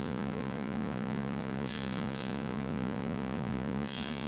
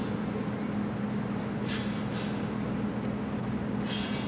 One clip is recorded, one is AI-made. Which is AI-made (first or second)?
first